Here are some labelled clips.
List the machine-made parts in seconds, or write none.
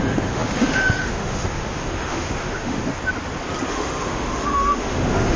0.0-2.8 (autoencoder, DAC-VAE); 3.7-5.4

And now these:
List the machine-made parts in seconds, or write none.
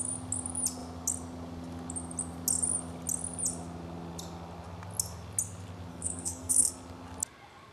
5.9-6.7 (codec, SNAC)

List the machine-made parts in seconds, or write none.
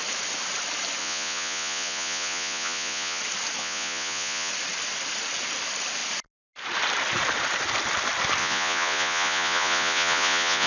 1.0-3.2 (vocoder, Vocos); 3.6-4.5; 8.4-10.7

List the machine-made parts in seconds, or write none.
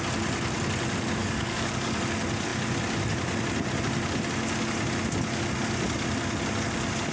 1.2-2.0 (codec, DAC)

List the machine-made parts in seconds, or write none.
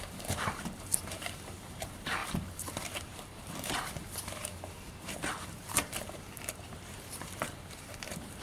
0.0-8.4 (vocoder, BigVGAN v2)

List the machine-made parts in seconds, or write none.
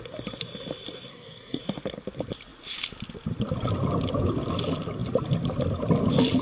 1.1-1.6 (codec, SNAC)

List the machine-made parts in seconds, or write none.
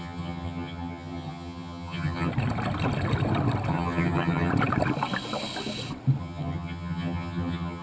0.0-2.3 (vocoder, HiFi-GAN); 3.7-4.5; 6.2-7.8